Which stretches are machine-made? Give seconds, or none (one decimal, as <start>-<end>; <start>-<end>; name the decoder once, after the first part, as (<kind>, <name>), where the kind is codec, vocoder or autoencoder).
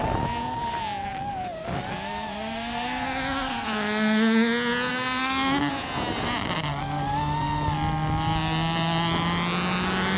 4.9-5.7 (codec, SNAC)